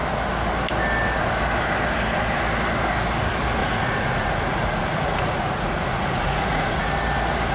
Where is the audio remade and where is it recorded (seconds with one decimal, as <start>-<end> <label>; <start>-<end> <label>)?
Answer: 0.0-3.6 recorded; 3.6-6.9 remade; 6.9-7.5 recorded